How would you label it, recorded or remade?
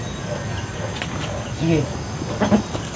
recorded